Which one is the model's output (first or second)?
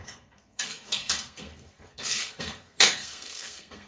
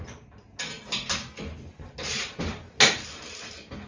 first